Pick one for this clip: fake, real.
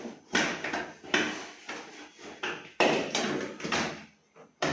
real